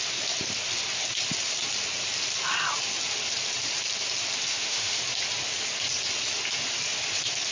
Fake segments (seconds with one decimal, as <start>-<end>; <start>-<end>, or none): 4.5-5.0